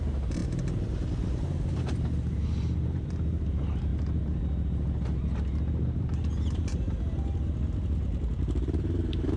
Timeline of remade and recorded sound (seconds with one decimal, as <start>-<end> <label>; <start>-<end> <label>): 0.0-3.9 remade; 3.9-6.0 recorded; 6.0-9.4 remade